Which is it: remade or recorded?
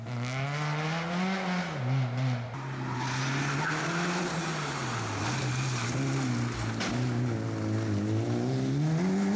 recorded